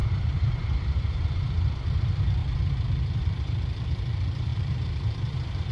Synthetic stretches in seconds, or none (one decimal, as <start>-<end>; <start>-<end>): 0.0-2.4; 3.2-5.7